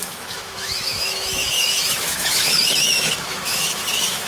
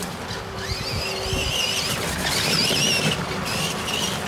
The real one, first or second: second